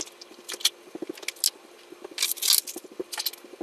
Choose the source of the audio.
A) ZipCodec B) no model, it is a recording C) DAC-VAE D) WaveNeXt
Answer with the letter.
B